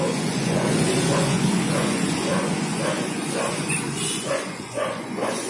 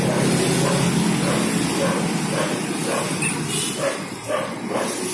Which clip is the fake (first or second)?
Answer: first